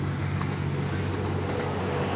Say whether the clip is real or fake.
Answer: real